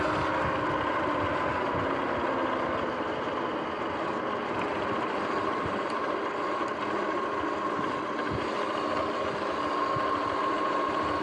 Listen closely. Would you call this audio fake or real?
real